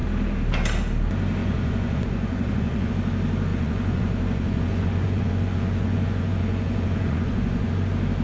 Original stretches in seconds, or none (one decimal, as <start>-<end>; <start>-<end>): 0.0-1.4; 2.9-3.5; 7.7-8.2